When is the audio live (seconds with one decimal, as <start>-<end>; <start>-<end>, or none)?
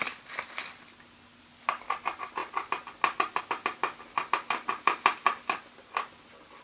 0.0-6.6